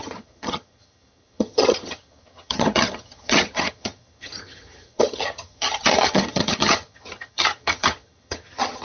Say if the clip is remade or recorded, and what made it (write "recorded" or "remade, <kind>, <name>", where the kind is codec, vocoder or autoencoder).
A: remade, vocoder, HiFi-GAN